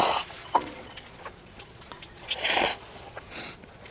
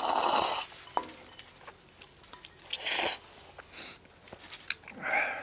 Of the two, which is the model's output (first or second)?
first